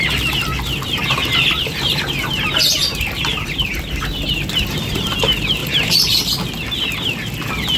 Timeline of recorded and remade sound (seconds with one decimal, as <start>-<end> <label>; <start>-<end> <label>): 0.0-5.6 recorded; 5.6-6.2 remade; 6.2-7.8 recorded